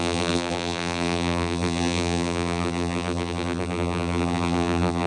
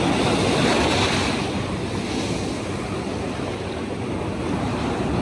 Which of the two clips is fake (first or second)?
first